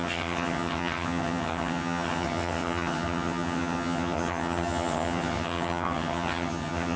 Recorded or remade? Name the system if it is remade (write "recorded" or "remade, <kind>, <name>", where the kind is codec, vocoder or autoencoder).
remade, vocoder, HiFi-GAN